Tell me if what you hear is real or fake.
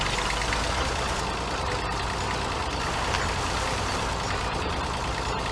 real